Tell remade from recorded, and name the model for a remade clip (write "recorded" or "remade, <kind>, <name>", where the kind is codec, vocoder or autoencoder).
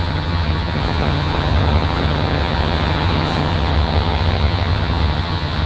remade, vocoder, HiFi-GAN